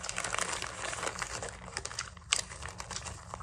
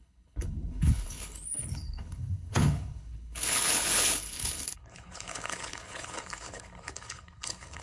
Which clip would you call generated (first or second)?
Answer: second